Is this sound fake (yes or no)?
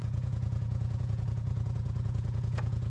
yes